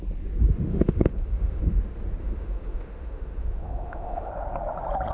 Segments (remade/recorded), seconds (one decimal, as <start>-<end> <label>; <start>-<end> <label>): 0.0-0.7 recorded; 0.7-1.6 remade; 1.6-2.2 recorded; 2.2-4.3 remade; 4.3-5.1 recorded